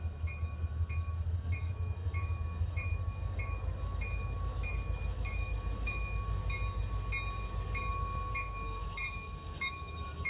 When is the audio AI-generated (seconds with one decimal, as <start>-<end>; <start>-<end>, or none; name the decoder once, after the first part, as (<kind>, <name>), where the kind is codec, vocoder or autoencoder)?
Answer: 0.0-6.4 (autoencoder, DAC-VAE); 7.9-10.3